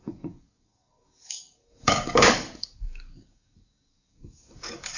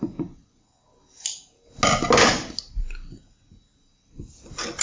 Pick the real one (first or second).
second